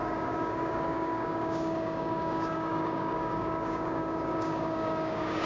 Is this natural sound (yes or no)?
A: no